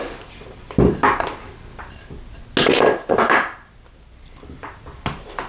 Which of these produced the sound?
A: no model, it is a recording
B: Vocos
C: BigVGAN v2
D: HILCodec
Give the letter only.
A